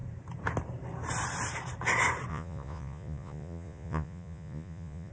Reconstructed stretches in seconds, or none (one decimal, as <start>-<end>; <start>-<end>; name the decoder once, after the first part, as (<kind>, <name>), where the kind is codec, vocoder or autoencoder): 2.3-5.1 (vocoder, Vocos)